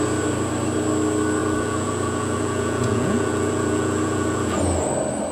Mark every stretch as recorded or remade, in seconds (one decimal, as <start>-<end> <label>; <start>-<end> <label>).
0.0-1.4 recorded; 1.4-4.6 remade; 4.6-5.3 recorded